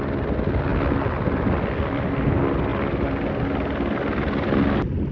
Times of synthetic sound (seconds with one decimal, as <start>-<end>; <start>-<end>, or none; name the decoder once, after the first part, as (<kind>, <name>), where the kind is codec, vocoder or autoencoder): none